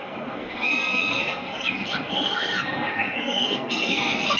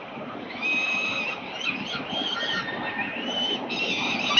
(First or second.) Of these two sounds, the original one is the second